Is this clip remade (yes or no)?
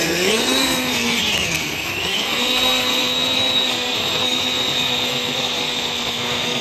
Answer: yes